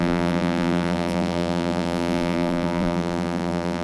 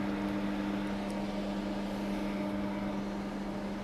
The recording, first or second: second